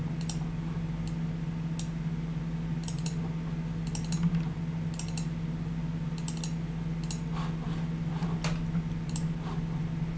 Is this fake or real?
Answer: real